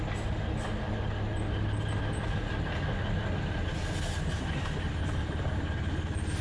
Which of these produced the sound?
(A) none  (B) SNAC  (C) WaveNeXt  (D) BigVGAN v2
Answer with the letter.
A